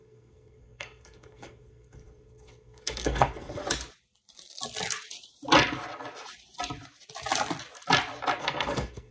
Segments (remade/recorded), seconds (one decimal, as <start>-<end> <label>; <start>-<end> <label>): 0.0-3.6 remade; 3.6-8.4 recorded; 8.4-9.1 remade